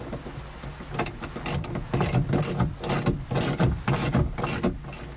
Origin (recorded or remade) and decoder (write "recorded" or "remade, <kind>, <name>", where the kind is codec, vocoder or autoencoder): recorded